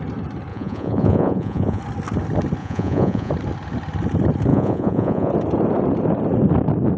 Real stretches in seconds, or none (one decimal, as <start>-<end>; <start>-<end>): 0.0-0.5; 1.8-2.6; 3.3-4.5; 5.3-7.0